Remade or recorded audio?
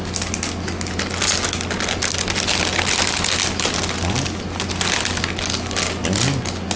recorded